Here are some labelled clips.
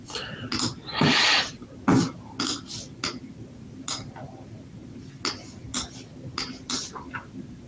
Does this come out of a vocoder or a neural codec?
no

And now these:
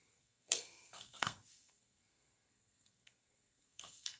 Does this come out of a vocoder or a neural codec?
yes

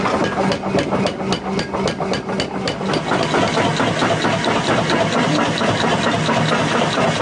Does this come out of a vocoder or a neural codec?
no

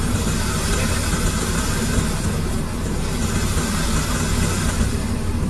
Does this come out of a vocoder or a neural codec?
no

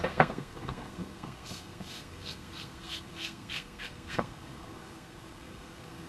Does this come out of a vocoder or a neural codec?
yes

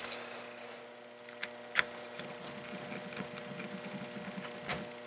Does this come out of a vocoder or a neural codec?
no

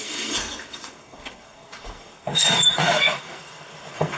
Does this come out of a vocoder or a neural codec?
yes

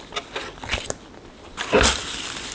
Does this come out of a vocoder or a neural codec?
no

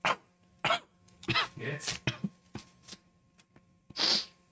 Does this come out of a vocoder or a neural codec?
no